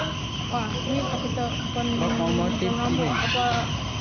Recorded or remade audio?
recorded